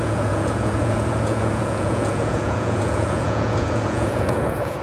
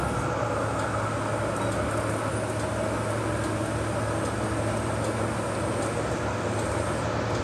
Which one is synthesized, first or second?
first